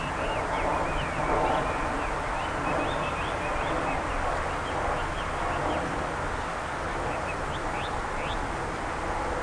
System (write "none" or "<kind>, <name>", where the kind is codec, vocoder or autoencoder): none